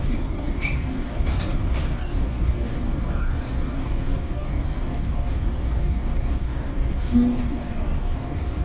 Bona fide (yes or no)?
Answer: no